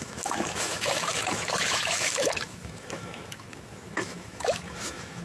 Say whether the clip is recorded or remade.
remade